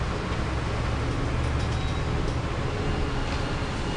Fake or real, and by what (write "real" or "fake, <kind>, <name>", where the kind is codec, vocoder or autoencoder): real